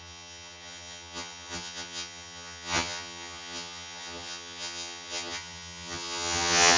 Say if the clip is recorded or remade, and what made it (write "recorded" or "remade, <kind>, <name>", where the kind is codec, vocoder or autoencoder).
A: remade, vocoder, HiFi-GAN